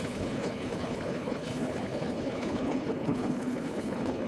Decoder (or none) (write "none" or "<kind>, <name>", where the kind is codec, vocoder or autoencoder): codec, HILCodec